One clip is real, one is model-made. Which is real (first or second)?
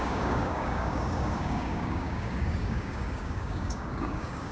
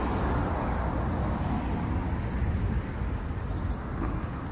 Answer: second